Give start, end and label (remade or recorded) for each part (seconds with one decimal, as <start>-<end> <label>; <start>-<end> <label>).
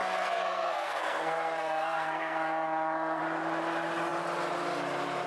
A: 0.0-3.2 remade; 3.2-5.3 recorded